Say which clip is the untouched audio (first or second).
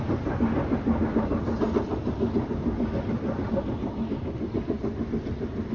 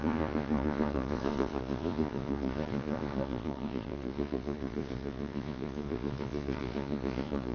first